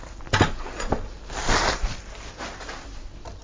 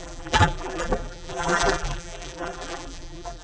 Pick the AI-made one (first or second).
second